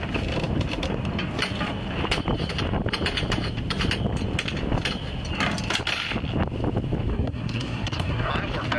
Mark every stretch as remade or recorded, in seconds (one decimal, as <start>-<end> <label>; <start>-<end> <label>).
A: 0.0-7.1 recorded; 7.1-8.3 remade; 8.3-8.8 recorded

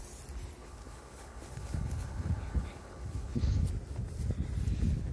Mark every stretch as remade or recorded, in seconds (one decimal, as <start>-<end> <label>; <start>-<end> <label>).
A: 0.0-0.6 recorded; 0.6-3.7 remade; 3.7-5.1 recorded